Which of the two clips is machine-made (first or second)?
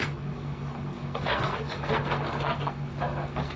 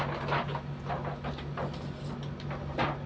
first